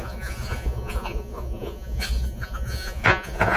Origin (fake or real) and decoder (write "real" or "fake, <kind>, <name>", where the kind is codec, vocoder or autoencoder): fake, vocoder, Vocos